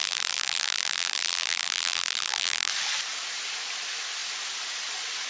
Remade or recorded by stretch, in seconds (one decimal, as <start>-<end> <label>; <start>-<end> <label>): 0.0-2.7 remade; 2.7-5.3 recorded